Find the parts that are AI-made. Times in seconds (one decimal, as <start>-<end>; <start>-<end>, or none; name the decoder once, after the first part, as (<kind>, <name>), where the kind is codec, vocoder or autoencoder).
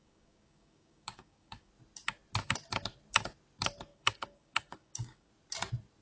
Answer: 0.0-1.7 (codec, DAC); 3.9-5.3